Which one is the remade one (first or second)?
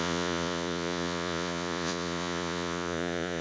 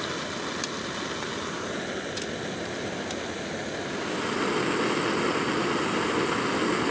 first